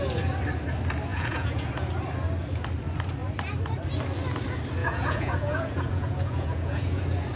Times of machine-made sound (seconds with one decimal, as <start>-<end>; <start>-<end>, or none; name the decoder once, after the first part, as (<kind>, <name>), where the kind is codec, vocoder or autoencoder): 1.1-1.7 (vocoder, Vocos); 4.8-7.0